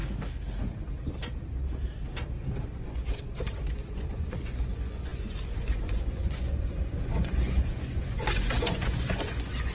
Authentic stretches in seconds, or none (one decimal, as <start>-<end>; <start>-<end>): 0.0-2.7